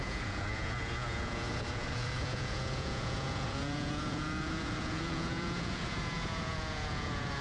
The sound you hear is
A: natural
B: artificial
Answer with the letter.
B